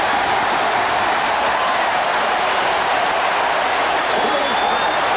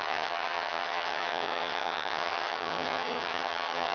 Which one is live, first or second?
first